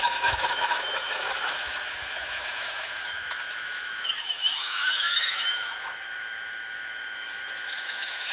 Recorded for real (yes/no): no